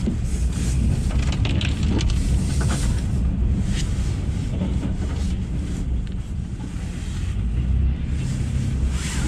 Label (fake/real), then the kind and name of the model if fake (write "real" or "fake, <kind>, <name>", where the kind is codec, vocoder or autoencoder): real